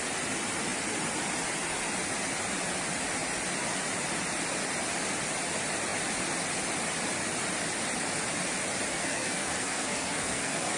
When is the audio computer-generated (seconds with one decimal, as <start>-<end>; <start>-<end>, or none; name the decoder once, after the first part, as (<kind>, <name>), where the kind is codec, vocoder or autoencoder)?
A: 8.9-10.8 (codec, SNAC)